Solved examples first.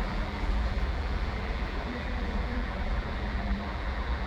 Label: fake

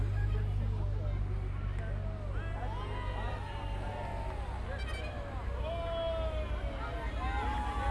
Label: real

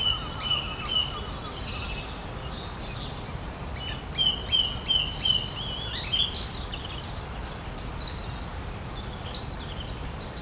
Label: real